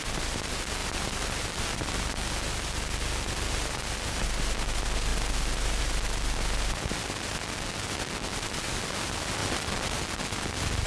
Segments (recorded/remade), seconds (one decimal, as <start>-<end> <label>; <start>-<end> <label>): 0.0-0.8 recorded; 0.8-2.3 remade; 2.3-9.4 recorded; 9.4-10.0 remade; 10.0-10.9 recorded